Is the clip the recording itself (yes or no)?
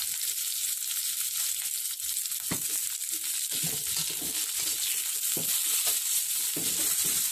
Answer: yes